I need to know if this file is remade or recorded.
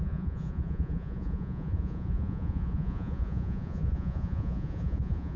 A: remade